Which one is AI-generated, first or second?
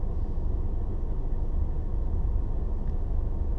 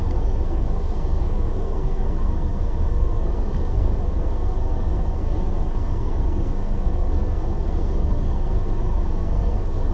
second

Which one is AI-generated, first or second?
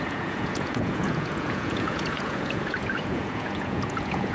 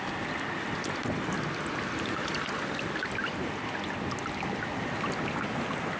first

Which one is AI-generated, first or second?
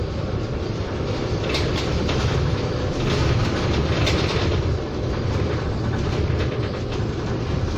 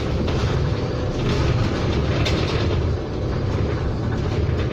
first